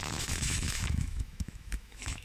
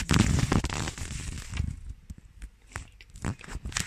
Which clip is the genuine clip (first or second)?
second